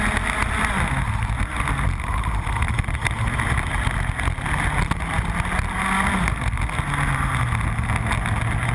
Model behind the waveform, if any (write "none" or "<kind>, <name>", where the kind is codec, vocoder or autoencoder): none